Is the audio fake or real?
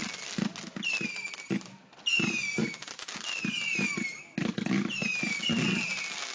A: real